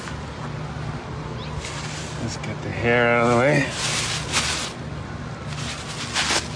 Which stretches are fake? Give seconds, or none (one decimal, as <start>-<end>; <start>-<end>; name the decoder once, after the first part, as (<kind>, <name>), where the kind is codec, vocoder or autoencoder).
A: none